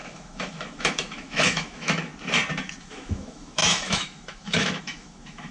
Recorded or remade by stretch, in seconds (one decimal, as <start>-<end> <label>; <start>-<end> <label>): 0.0-2.1 remade; 2.1-2.8 recorded; 2.8-5.5 remade